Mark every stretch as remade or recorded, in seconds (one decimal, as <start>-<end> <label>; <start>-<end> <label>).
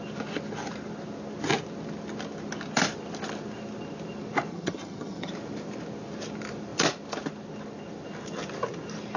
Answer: 0.0-4.5 recorded; 4.5-5.3 remade; 5.3-9.2 recorded